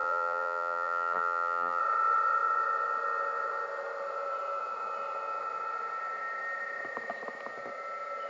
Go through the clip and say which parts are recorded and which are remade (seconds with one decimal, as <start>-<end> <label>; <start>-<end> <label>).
0.0-1.8 remade; 1.8-8.3 recorded